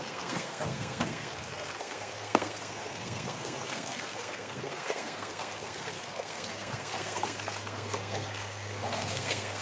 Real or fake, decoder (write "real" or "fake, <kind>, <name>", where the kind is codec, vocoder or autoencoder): fake, codec, SNAC